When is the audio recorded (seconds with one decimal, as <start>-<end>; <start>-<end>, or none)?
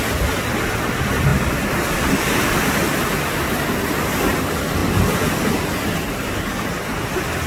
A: 0.0-4.8; 6.1-7.5